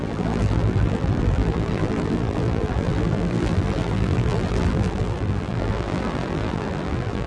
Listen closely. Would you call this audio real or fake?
fake